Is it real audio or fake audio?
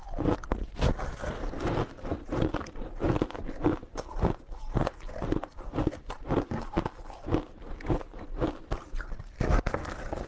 real